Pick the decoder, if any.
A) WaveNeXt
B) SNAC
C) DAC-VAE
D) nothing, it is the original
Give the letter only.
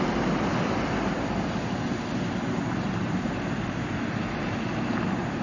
D